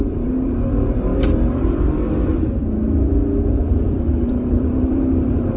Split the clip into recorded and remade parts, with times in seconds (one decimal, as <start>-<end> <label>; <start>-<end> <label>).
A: 0.0-2.3 remade; 2.3-3.5 recorded; 3.5-5.6 remade